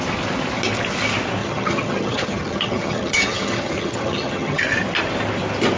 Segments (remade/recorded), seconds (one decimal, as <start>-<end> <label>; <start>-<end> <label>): 0.0-1.4 recorded; 1.4-4.6 remade; 4.6-5.8 recorded